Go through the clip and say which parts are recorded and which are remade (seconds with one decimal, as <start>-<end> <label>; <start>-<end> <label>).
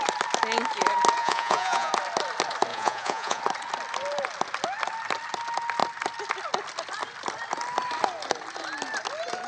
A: 0.0-1.2 recorded; 1.2-1.9 remade; 1.9-2.7 recorded; 2.7-3.4 remade; 3.4-9.5 recorded